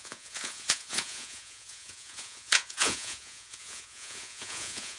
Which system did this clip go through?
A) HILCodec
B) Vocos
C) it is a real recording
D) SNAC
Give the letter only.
B